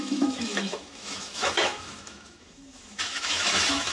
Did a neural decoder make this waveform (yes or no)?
yes